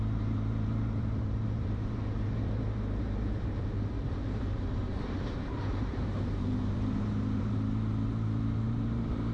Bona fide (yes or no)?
no